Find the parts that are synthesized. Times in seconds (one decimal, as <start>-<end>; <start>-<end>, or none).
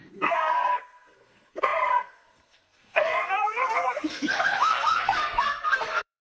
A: 0.0-6.2